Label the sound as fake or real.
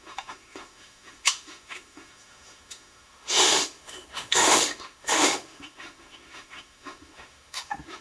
fake